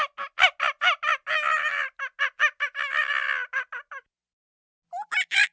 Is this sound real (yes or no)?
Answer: yes